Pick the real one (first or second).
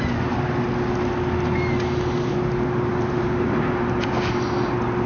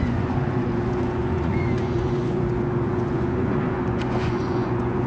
first